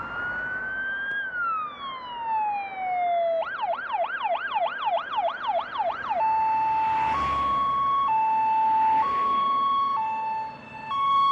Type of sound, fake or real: real